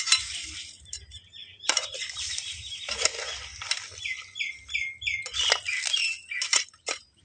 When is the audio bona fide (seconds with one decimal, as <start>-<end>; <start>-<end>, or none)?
3.1-6.4